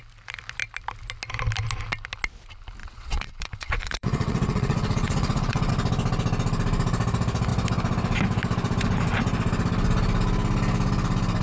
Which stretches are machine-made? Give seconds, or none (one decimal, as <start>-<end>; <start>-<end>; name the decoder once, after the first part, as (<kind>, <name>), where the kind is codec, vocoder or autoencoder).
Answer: 2.8-5.7 (vocoder, WaveNeXt)